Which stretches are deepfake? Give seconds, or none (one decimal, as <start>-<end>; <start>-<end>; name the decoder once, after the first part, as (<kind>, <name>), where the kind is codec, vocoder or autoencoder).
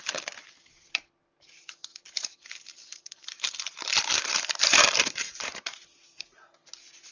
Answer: 1.9-6.2 (vocoder, BigVGAN v2)